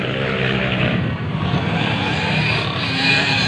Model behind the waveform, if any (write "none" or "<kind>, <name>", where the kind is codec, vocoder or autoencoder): vocoder, BigVGAN v2